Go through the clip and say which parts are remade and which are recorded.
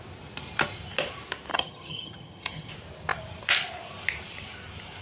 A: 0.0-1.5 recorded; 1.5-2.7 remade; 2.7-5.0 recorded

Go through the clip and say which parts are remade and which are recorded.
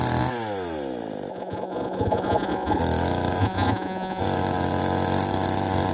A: 0.0-1.3 recorded; 1.3-2.8 remade; 2.8-3.4 recorded; 3.4-4.2 remade; 4.2-5.9 recorded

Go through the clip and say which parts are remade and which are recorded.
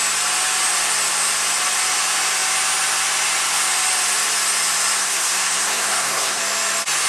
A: 0.0-5.0 recorded; 5.0-6.4 remade; 6.4-7.1 recorded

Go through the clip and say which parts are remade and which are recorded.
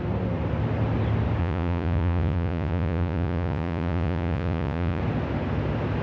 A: 0.0-1.4 recorded; 1.4-5.0 remade; 5.0-6.0 recorded